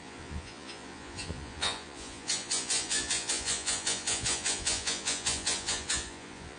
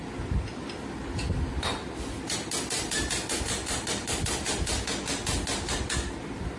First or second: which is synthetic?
first